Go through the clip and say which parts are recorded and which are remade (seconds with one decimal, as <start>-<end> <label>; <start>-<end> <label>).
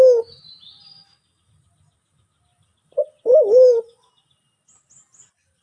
0.0-2.7 recorded; 2.7-4.3 remade; 4.3-5.6 recorded